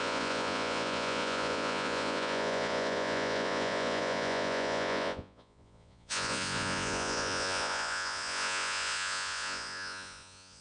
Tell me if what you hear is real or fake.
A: fake